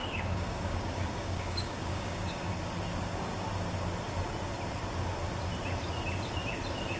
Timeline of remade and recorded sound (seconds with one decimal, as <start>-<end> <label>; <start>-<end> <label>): 0.0-2.5 remade; 2.5-7.0 recorded